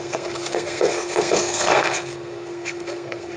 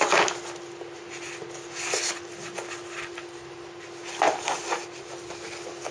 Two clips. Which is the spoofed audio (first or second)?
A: first